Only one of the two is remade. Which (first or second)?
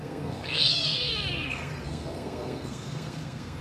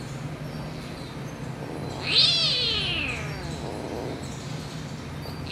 first